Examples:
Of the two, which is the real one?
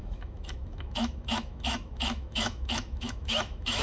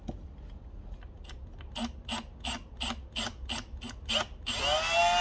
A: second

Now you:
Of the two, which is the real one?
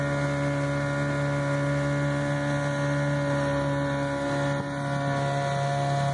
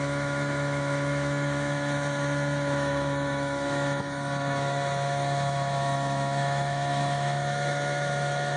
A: first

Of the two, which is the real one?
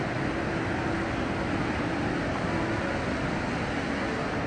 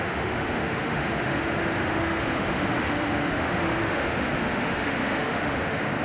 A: first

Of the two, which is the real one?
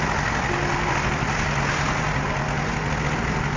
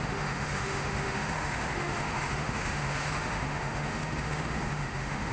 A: first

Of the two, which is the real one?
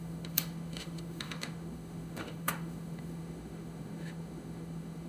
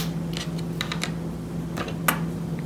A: second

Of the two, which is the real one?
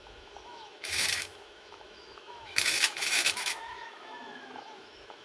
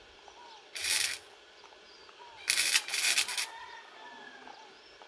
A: second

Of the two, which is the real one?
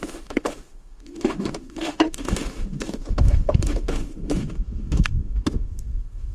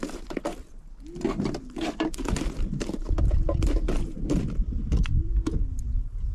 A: second